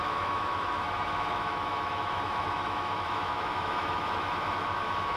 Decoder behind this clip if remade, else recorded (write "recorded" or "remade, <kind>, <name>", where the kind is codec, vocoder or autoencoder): remade, autoencoder, DAC-VAE